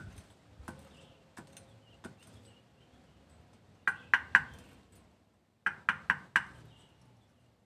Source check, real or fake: real